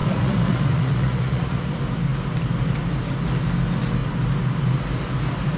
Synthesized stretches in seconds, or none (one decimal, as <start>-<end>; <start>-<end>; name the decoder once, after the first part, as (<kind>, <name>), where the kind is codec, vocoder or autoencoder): 0.0-1.7 (vocoder, Vocos)